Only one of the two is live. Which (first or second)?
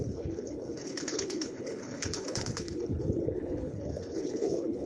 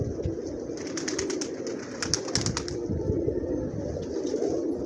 second